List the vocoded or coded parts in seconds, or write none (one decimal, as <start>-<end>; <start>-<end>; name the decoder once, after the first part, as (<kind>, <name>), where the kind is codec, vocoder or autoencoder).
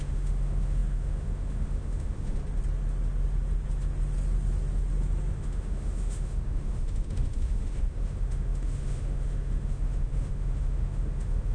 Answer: 0.0-2.4 (autoencoder, DAC-VAE); 5.3-11.5